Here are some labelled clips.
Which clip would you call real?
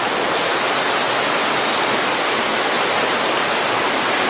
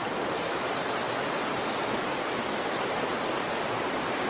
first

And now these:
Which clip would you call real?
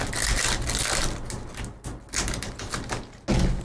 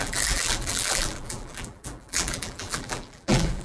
first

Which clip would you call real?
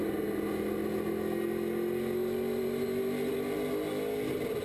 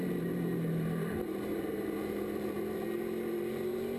first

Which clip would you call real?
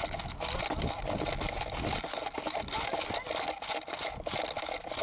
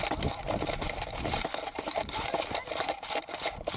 first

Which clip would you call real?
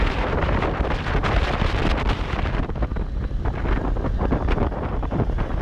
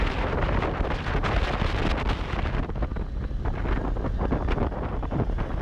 second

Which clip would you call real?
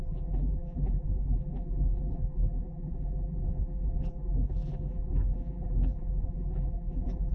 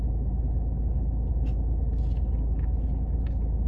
second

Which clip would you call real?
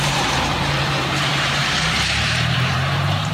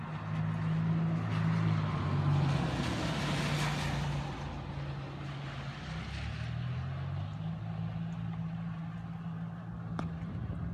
second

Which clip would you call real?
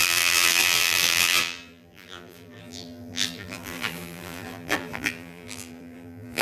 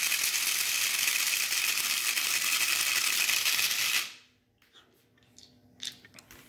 second